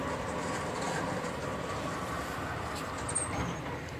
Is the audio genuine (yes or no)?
no